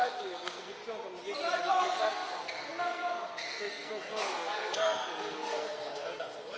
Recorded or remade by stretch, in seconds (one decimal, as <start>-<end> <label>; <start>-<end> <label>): 0.0-0.8 remade; 0.8-1.6 recorded; 1.6-6.6 remade